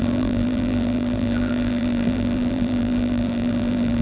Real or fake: fake